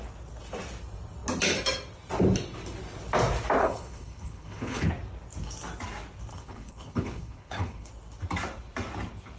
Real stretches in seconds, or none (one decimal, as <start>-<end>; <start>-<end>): 0.0-3.6; 4.9-6.3; 7.9-9.4